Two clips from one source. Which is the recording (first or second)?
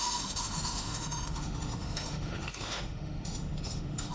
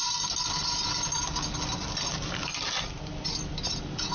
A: second